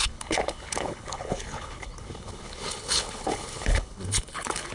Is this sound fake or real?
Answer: fake